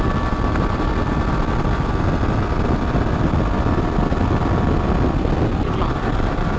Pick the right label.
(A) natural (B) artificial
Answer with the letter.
A